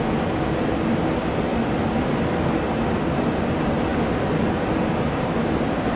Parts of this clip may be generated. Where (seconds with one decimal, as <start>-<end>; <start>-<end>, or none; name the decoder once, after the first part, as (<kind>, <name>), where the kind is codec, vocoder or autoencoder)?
none

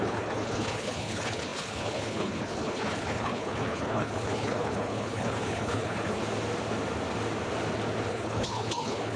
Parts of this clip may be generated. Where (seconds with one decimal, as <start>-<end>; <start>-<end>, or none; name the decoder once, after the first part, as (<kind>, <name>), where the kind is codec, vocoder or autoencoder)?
0.0-6.2 (codec, HILCodec); 8.1-9.2

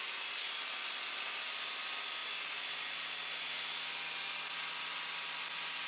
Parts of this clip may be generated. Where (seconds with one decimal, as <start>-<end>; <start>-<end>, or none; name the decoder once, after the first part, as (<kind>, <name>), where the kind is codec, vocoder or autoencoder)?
none

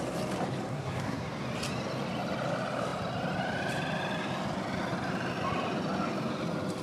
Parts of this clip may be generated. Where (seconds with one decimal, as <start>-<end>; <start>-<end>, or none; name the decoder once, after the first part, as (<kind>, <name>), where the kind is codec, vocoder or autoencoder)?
0.7-1.3 (codec, SNAC)

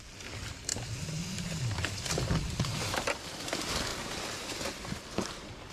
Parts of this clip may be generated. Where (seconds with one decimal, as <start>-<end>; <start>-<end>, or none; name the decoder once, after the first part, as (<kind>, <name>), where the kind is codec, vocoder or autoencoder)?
none

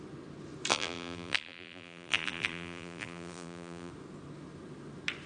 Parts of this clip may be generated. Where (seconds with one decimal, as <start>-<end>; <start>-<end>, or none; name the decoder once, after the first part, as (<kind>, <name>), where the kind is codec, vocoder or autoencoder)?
0.7-3.9 (vocoder, BigVGAN v2)